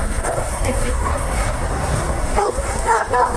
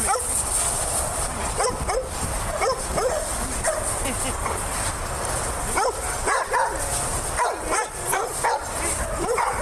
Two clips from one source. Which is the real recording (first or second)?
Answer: second